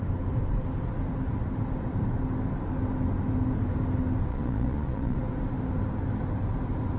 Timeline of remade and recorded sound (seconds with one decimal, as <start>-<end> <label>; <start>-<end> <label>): 0.0-4.3 recorded; 4.3-5.2 remade; 5.2-7.0 recorded